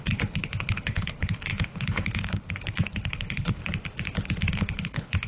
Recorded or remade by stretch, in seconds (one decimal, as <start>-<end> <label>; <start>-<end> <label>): 0.0-3.6 remade; 3.6-4.5 recorded; 4.5-5.3 remade